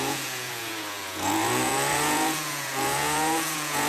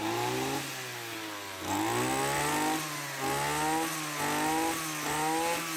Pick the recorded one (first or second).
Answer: second